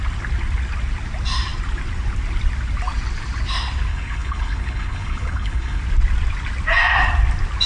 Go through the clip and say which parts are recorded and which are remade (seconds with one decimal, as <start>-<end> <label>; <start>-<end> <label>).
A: 0.0-3.9 recorded; 3.9-5.8 remade; 5.8-7.7 recorded